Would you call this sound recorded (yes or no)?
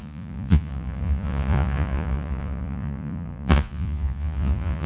no